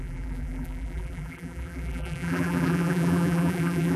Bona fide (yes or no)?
no